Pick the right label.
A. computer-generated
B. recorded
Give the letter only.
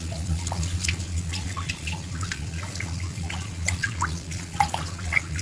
A